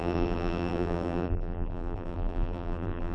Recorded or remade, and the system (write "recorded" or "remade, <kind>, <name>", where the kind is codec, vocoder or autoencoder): remade, vocoder, BigVGAN v2